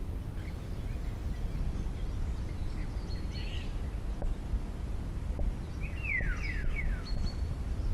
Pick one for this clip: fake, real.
real